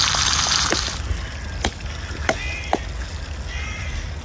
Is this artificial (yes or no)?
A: no